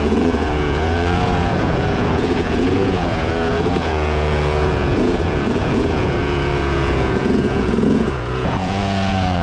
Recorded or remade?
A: remade